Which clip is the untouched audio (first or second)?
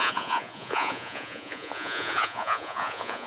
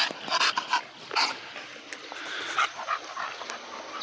second